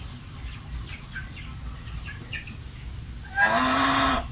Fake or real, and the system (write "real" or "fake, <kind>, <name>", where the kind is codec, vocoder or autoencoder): real